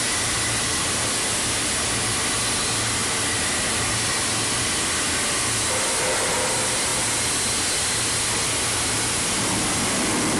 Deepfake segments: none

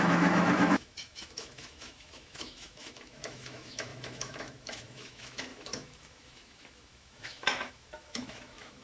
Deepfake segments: 0.0-8.8 (autoencoder, DAC-VAE)

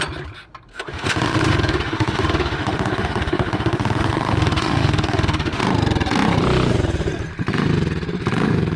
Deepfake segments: 0.7-5.6 (autoencoder, DAC-VAE)

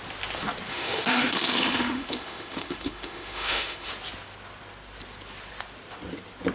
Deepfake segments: 0.7-3.9 (autoencoder, DAC-VAE)

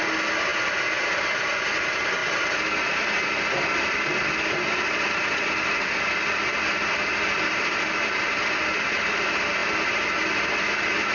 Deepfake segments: none

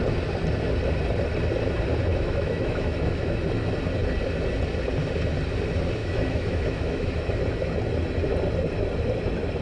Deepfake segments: 2.1-3.4 (autoencoder, DAC-VAE); 6.0-7.4

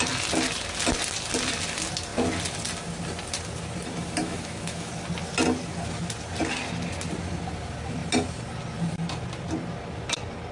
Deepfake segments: 4.2-4.9 (autoencoder, DAC-VAE)

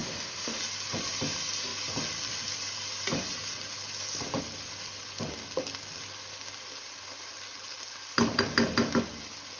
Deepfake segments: 0.0-0.6 (autoencoder, DAC-VAE)